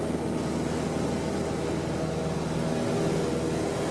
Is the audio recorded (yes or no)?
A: yes